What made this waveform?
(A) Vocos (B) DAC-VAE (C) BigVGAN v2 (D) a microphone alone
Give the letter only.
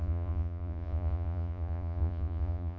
A